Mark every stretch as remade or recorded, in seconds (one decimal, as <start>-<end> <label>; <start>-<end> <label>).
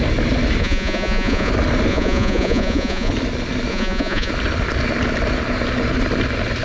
0.0-0.6 recorded; 0.6-1.5 remade; 1.5-1.9 recorded; 1.9-3.1 remade; 3.1-3.7 recorded; 3.7-4.3 remade; 4.3-6.6 recorded